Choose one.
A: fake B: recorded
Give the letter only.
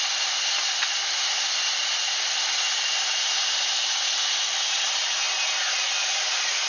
B